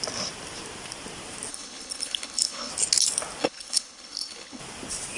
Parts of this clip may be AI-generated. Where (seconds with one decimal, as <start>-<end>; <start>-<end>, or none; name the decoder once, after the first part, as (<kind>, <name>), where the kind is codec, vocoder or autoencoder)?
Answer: 1.5-2.7 (codec, HILCodec); 3.4-4.6